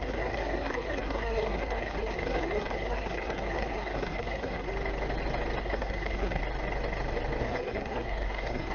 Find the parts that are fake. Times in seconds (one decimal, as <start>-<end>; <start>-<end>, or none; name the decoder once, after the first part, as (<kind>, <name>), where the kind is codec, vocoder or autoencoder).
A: 0.0-4.7 (codec, SNAC); 5.6-6.4; 7.4-8.7